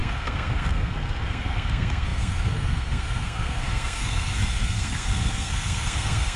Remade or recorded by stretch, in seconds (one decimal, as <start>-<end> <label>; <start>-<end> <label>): 0.0-6.4 remade